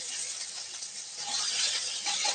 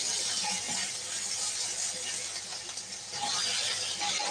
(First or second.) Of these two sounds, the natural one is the second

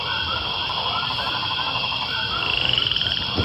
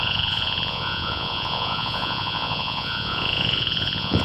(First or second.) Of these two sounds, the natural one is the first